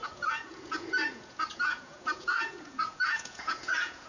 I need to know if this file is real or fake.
fake